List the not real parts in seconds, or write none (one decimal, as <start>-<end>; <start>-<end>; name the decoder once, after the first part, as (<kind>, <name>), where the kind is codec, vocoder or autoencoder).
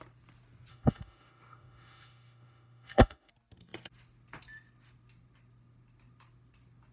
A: 0.7-3.3 (autoencoder, DAC-VAE)